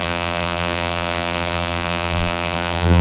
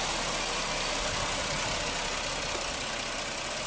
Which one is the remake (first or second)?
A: first